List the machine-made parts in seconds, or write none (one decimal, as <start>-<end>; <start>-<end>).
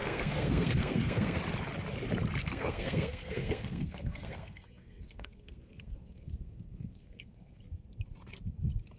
0.0-1.4; 2.4-7.6